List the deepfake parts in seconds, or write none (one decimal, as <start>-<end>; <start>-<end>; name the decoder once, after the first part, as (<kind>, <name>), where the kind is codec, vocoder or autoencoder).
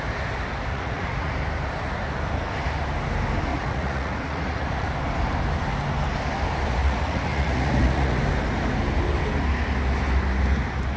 0.7-1.3 (vocoder, Vocos); 3.5-4.9; 6.8-8.2